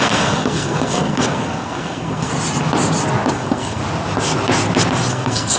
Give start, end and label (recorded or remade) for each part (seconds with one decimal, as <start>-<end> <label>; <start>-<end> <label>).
0.0-2.3 remade; 2.3-3.3 recorded; 3.3-3.8 remade; 3.8-5.1 recorded; 5.1-5.6 remade